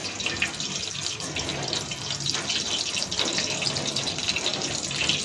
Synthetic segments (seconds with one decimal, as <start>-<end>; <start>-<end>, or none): none

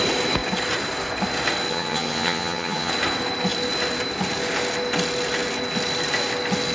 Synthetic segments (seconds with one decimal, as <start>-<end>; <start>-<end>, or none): 1.7-2.9

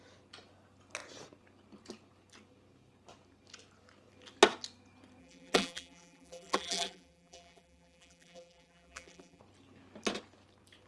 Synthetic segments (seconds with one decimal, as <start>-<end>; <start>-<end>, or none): 5.2-9.4

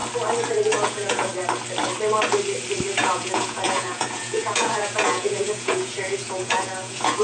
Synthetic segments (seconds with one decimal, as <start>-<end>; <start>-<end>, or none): 0.7-1.3; 2.9-7.2

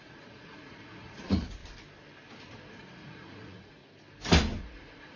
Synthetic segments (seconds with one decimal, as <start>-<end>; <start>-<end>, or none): 0.0-1.6; 2.7-3.8; 4.6-5.2